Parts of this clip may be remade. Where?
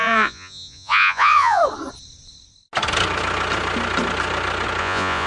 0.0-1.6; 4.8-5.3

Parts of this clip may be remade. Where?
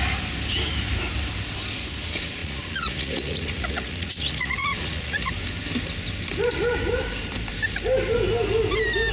2.4-5.3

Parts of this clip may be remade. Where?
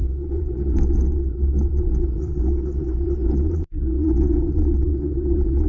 0.0-5.7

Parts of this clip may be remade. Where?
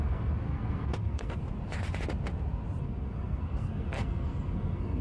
0.0-1.4; 2.8-5.0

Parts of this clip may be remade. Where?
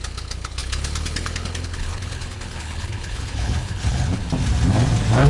0.0-4.2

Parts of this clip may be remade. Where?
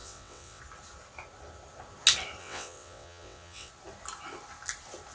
0.0-0.6; 2.4-3.7